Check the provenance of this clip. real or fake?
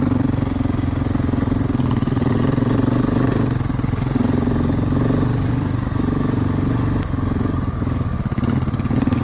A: real